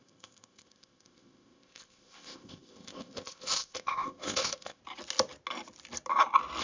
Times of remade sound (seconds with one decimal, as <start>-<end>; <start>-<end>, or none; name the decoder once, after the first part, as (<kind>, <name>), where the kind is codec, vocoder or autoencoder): 0.0-4.8 (codec, ZipCodec)